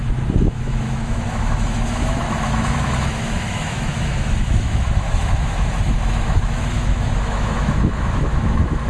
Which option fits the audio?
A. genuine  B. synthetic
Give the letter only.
B